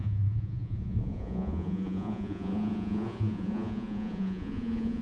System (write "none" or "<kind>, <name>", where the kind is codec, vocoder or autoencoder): vocoder, Vocos